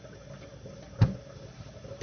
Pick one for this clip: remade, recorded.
recorded